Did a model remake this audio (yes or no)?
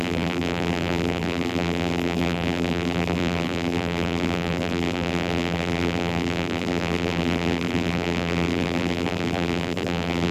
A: yes